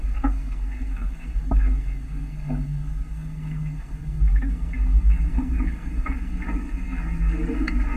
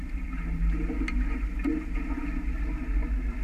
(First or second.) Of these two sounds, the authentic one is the second